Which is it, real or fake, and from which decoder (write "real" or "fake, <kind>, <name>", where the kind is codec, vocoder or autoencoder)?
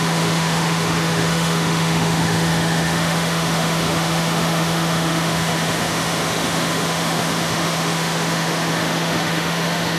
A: fake, autoencoder, DAC-VAE